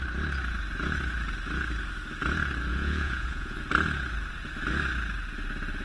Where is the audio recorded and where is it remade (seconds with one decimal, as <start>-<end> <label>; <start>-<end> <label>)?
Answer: 0.0-2.7 recorded; 2.7-3.6 remade; 3.6-5.8 recorded